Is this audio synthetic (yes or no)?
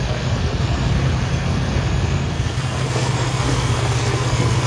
yes